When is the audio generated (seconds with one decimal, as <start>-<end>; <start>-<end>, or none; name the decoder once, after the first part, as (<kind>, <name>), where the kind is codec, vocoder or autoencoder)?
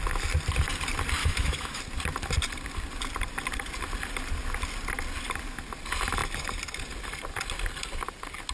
1.2-1.8 (autoencoder, DAC-VAE)